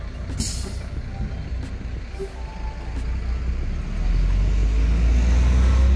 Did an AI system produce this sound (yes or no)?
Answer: no